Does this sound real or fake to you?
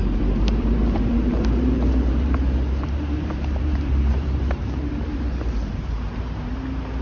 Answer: fake